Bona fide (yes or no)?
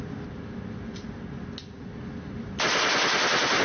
yes